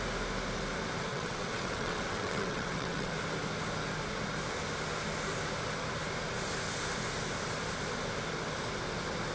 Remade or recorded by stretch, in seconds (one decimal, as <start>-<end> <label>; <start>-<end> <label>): 0.0-1.1 recorded; 1.1-3.1 remade; 3.1-9.3 recorded